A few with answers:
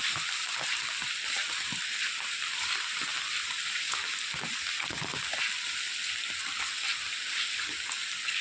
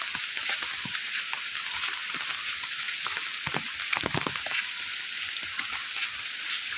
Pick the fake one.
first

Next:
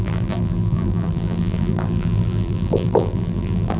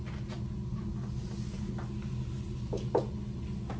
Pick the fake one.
first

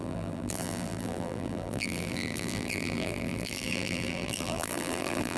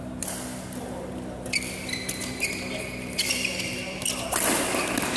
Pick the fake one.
first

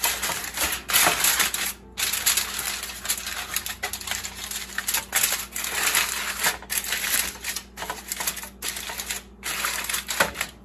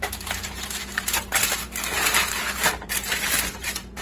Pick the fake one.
second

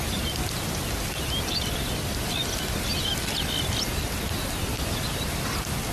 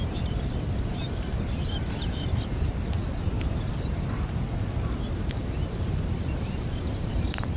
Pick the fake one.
second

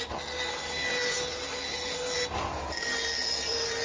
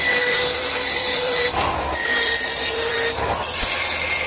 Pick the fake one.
second